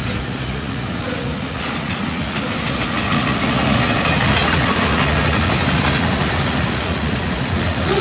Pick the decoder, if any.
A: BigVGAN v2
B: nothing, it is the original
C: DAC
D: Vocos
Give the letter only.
D